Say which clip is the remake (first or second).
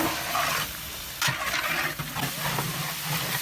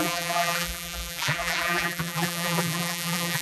second